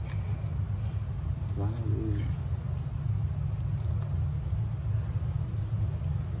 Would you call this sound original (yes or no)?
yes